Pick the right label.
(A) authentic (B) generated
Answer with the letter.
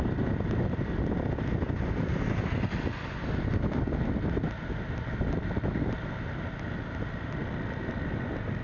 A